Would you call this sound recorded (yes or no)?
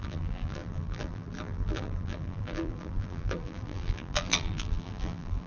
no